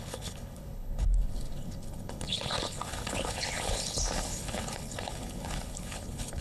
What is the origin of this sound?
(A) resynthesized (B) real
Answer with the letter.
A